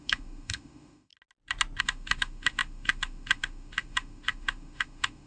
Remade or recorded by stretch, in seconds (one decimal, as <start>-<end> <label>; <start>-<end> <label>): 0.0-1.1 remade; 1.1-1.8 recorded; 1.8-5.3 remade